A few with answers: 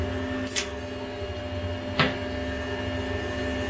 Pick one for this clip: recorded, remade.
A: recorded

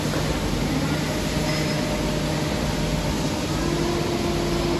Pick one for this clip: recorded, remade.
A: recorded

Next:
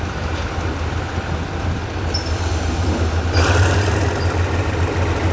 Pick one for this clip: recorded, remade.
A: recorded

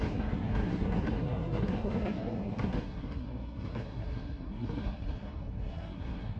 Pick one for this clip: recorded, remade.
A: remade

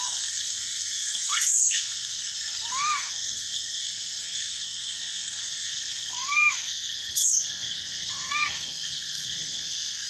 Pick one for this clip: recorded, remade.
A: remade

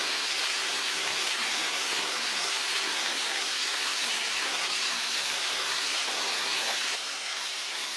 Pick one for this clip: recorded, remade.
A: remade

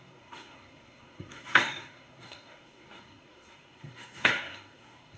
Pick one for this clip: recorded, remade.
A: remade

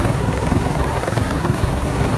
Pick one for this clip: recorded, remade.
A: remade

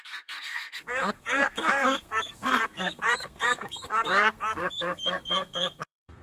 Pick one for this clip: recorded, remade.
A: remade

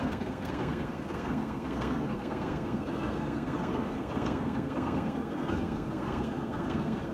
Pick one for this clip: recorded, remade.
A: remade